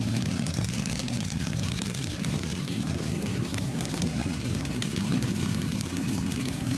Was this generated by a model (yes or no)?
yes